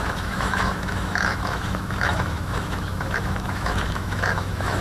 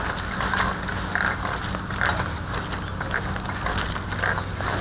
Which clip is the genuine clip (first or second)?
second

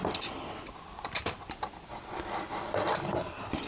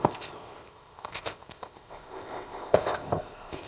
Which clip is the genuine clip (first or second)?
first